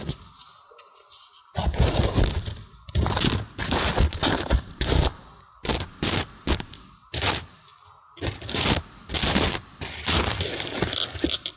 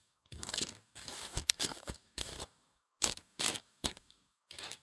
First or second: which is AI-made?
second